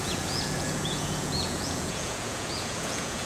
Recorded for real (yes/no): no